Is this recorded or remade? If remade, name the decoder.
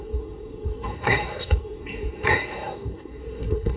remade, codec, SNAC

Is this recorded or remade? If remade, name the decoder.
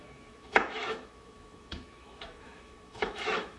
remade, autoencoder, DAC-VAE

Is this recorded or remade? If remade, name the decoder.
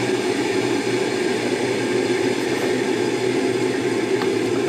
recorded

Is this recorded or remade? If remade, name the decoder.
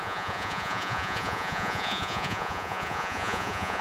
remade, vocoder, Vocos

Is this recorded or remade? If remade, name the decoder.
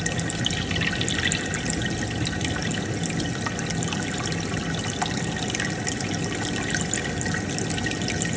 recorded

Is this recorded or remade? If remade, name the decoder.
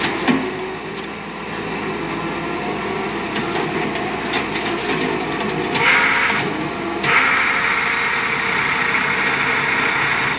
recorded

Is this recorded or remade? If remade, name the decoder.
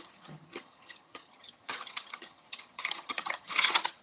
remade, vocoder, HiFi-GAN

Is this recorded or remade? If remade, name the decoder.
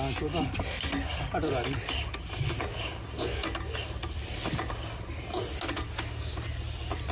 recorded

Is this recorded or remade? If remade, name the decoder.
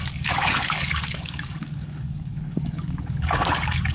remade, codec, DAC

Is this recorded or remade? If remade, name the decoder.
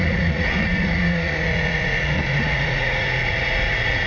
remade, vocoder, Vocos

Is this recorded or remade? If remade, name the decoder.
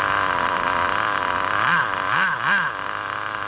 recorded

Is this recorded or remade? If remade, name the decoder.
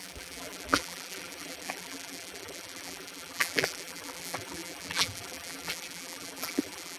remade, vocoder, BigVGAN v2